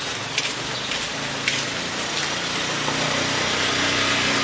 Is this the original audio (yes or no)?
yes